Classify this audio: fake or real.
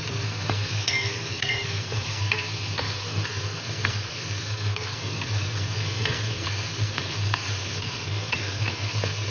fake